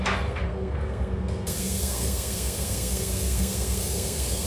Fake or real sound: fake